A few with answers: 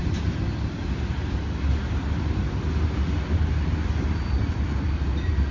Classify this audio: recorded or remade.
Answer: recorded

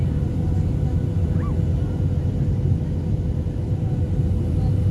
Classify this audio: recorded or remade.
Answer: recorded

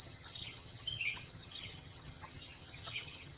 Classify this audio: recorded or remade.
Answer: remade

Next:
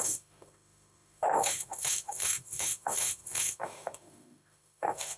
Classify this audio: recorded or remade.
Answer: remade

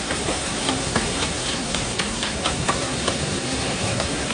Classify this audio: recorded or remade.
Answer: remade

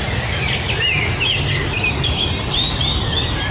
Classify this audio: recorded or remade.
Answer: recorded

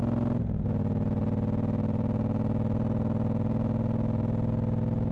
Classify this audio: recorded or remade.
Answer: recorded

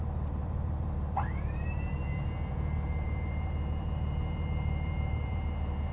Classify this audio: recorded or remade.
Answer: remade